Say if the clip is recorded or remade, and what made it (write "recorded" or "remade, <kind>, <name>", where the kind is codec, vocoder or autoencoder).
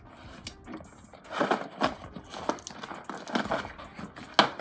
recorded